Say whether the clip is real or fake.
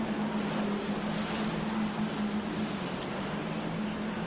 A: real